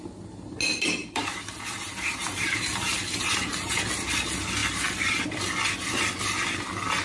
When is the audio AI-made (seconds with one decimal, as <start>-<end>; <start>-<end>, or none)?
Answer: 1.0-3.8